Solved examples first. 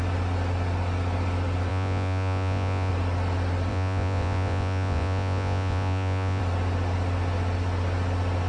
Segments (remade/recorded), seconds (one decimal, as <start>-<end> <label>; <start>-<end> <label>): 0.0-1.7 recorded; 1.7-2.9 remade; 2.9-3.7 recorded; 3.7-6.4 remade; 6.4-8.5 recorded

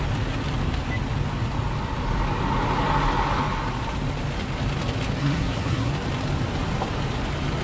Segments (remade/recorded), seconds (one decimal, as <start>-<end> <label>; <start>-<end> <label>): 0.0-5.2 recorded; 5.2-5.9 remade; 5.9-7.6 recorded

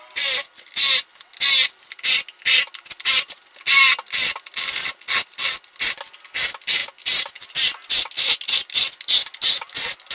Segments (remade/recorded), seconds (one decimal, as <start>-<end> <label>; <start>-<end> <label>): 0.0-10.1 recorded

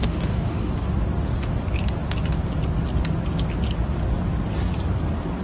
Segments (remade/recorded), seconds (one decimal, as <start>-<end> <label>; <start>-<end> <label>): 0.0-0.7 remade; 0.7-5.4 recorded

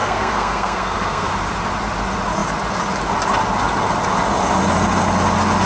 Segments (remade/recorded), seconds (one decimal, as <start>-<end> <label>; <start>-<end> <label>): 0.0-1.3 remade; 1.3-5.7 recorded